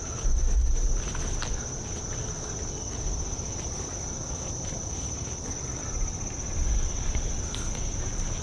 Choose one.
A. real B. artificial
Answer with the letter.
A